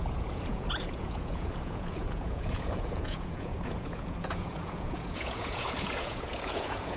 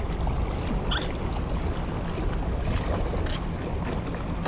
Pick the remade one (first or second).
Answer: first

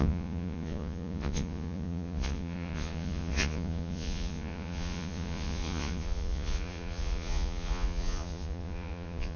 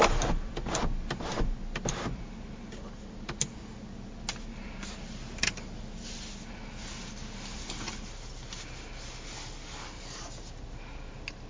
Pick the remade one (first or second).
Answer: first